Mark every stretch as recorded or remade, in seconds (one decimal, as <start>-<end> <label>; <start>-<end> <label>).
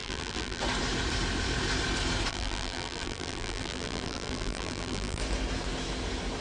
0.0-0.6 remade; 0.6-2.3 recorded; 2.3-5.2 remade; 5.2-6.4 recorded